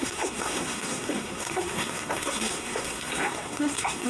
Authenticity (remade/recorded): remade